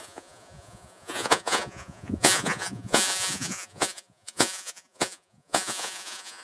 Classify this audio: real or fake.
fake